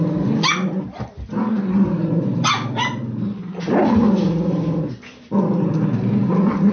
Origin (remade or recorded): recorded